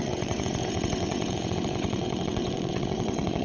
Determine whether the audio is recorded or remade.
remade